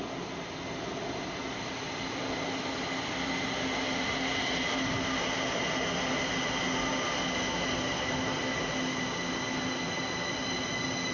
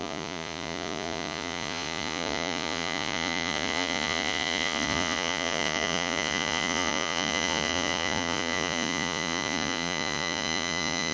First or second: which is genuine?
first